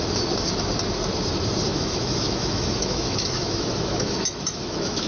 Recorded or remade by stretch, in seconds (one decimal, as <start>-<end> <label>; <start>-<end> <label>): 0.0-1.7 recorded; 1.7-5.1 remade